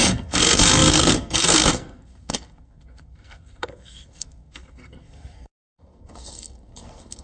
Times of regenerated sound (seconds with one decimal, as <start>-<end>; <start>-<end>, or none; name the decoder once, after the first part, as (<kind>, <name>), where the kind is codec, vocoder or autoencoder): 0.0-7.2 (codec, SNAC)